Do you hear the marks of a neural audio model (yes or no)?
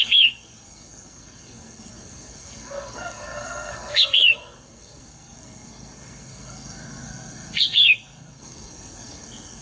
yes